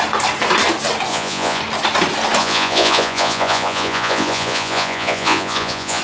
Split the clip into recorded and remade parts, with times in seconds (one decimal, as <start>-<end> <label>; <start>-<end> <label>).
0.0-1.1 recorded; 1.1-1.6 remade; 1.6-2.4 recorded; 2.4-6.0 remade